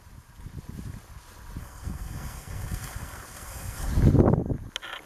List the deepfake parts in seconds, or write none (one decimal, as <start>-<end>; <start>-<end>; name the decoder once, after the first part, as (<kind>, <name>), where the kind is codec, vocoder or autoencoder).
1.6-3.9 (codec, SNAC)